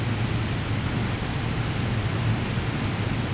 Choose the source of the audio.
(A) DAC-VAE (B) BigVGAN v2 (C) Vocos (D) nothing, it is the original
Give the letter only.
D